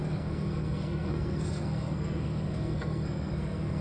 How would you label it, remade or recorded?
remade